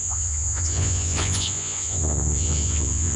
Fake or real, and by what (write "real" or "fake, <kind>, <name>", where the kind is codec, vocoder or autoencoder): fake, vocoder, Vocos